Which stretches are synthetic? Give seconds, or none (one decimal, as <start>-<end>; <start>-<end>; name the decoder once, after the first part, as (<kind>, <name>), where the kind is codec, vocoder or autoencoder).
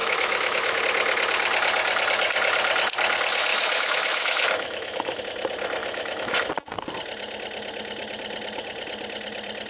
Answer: 0.0-0.8 (autoencoder, DAC-VAE); 3.5-5.2; 5.8-6.5